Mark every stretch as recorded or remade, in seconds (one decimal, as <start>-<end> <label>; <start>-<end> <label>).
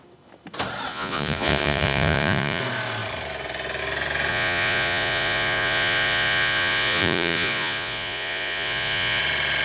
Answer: 0.0-0.9 recorded; 0.9-2.6 remade; 2.6-4.3 recorded; 4.3-9.2 remade; 9.2-9.6 recorded